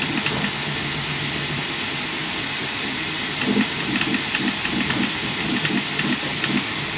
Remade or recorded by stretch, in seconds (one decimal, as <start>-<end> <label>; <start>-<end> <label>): 0.0-2.2 recorded; 2.2-5.7 remade; 5.7-7.0 recorded